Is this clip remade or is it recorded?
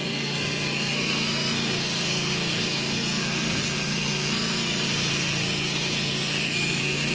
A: remade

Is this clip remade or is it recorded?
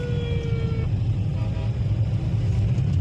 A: recorded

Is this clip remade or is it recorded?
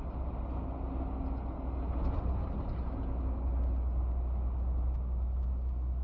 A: recorded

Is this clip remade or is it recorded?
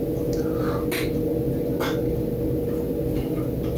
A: recorded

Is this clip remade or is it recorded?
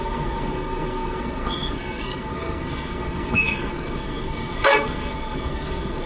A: remade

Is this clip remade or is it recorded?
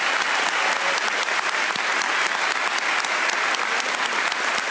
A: recorded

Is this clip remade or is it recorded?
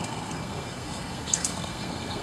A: remade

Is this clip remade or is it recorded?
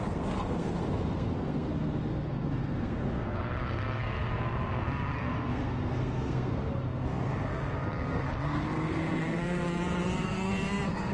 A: remade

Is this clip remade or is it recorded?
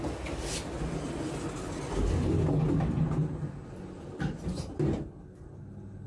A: recorded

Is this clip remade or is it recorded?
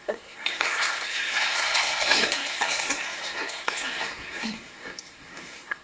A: remade